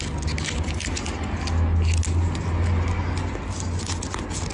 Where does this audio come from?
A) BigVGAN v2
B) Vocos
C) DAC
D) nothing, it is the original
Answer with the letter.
D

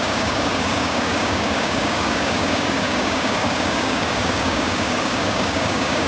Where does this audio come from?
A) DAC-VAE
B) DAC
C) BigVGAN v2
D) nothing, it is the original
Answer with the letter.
B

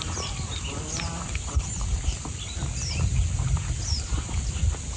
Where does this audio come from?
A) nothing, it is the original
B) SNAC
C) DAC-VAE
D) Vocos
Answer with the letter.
A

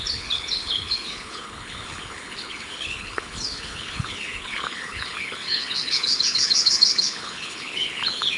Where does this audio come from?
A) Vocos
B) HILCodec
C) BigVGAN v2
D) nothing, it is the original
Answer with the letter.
B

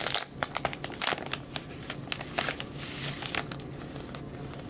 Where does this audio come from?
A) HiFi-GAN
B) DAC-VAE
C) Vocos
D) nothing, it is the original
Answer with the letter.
D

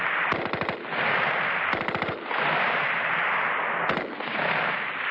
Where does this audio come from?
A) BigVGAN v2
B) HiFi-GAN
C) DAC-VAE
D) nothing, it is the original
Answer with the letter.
D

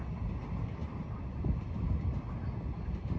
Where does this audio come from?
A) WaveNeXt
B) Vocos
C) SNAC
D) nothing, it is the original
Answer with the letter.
D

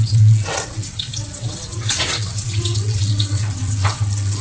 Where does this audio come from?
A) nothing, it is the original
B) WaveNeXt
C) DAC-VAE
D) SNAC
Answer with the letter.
B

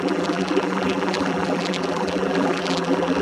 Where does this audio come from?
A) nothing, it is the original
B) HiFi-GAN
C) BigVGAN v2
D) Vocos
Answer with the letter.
C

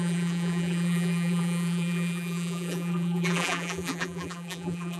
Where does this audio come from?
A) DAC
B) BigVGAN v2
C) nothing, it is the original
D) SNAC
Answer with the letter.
B